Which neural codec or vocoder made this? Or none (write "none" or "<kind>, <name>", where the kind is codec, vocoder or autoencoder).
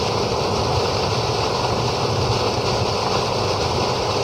none